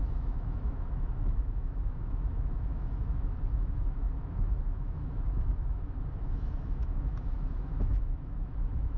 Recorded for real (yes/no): no